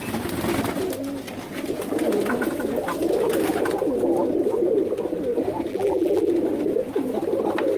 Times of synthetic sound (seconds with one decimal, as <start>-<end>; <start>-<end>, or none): 5.7-6.3